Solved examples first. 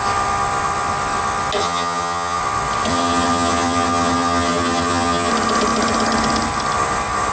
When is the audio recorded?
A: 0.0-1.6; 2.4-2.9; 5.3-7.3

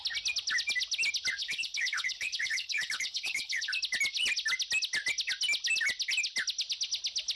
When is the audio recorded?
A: 0.0-1.4; 3.7-7.4

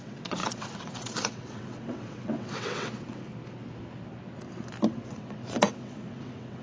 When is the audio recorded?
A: 3.3-4.9

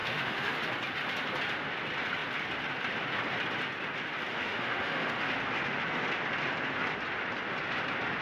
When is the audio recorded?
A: 0.6-4.3; 5.3-8.2

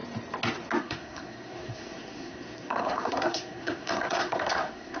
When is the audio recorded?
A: 0.0-0.8

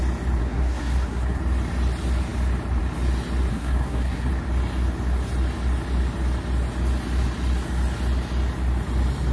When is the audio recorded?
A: 0.0-0.4; 1.4-3.5; 4.3-9.3

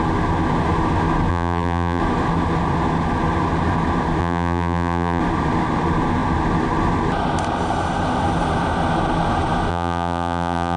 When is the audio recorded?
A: 0.0-1.3; 2.0-4.2; 5.2-9.7

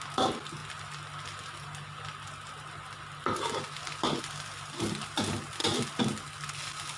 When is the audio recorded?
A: 0.0-7.0